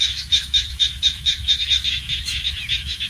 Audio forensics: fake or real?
fake